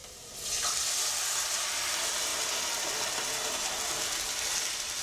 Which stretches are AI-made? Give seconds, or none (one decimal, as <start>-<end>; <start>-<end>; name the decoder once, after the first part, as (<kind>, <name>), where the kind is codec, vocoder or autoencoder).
none